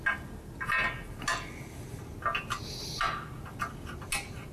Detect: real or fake real